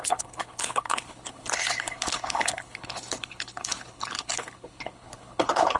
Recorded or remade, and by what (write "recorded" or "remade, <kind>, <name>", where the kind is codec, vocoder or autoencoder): remade, codec, HILCodec